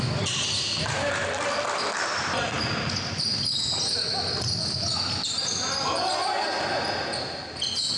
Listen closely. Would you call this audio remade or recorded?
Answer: recorded